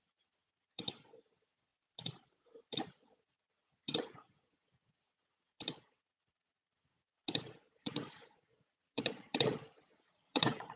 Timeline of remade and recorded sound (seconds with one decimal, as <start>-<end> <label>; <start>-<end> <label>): 0.0-1.7 remade; 1.7-2.7 recorded; 2.7-7.2 remade; 7.2-7.7 recorded; 7.7-10.8 remade